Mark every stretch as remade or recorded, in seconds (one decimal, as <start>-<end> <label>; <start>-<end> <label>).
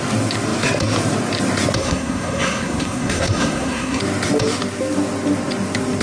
0.0-1.8 recorded; 1.8-4.0 remade; 4.0-6.0 recorded